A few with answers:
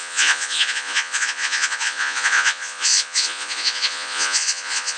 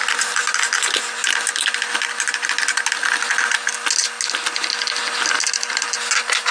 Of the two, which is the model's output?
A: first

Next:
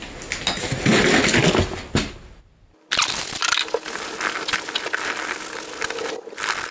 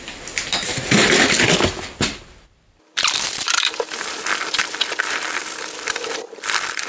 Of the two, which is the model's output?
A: second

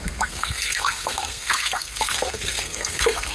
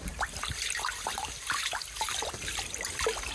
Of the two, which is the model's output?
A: first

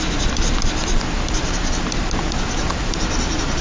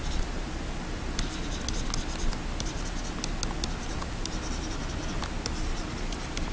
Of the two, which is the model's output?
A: first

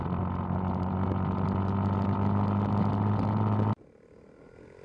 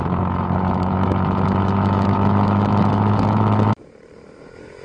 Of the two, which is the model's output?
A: second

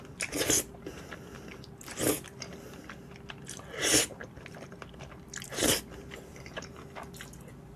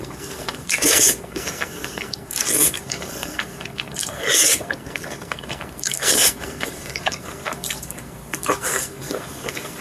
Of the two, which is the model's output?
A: second